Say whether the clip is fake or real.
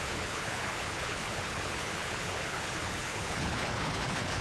fake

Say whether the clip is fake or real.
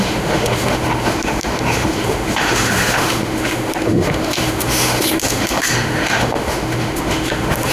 fake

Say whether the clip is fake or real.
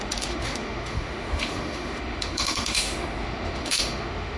fake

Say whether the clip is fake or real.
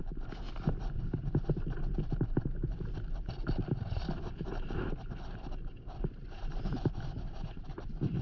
real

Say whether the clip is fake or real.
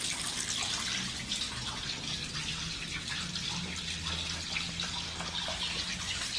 real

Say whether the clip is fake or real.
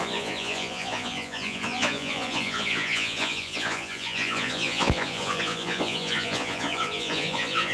fake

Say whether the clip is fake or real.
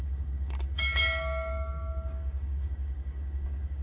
fake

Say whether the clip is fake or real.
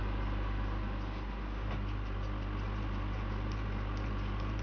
real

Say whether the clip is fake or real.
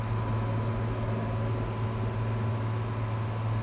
real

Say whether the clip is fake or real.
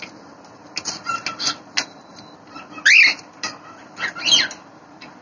real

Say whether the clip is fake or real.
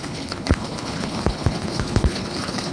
fake